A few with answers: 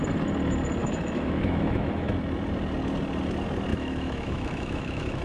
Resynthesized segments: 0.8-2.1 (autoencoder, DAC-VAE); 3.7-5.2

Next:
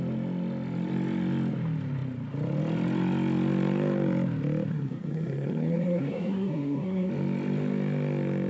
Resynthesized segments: 4.7-7.1 (codec, SNAC)

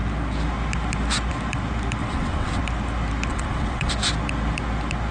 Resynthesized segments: 2.0-2.6 (vocoder, WaveNeXt); 3.3-3.9

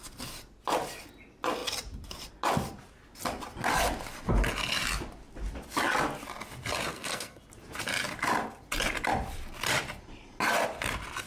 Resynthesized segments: 6.9-7.4 (codec, SNAC)

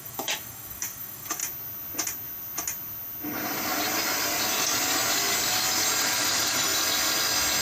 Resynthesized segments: 0.0-1.4 (autoencoder, DAC-VAE); 6.0-6.7

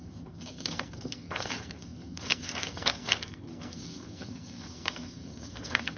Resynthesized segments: 0.0-6.0 (codec, SNAC)